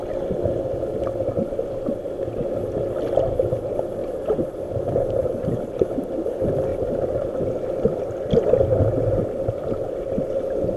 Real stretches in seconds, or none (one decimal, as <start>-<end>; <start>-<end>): 0.0-4.0; 6.0-6.7; 7.3-10.8